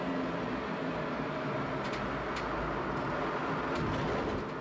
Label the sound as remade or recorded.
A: recorded